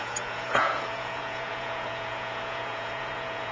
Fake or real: fake